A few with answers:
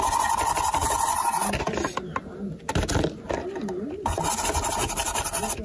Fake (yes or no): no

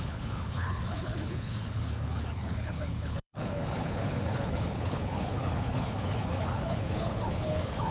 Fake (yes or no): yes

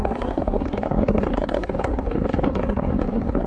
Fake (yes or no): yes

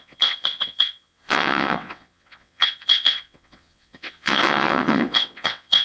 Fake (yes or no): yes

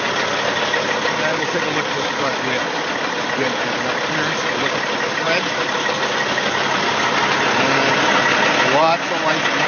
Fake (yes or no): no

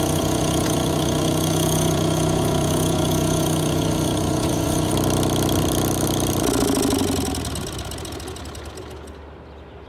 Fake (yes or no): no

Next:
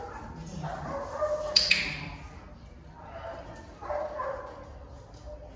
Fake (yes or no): no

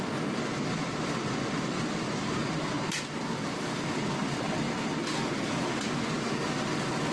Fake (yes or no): no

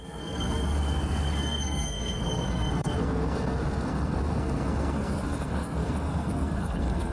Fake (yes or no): yes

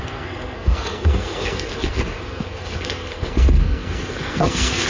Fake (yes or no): yes